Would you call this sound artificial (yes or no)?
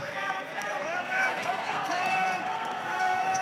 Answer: yes